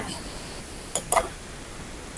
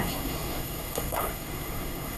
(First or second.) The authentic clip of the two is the first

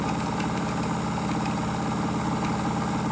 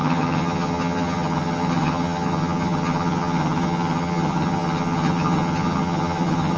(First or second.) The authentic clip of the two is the first